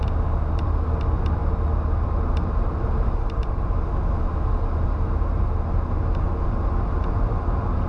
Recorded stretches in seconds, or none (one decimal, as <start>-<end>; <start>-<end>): 0.0-7.9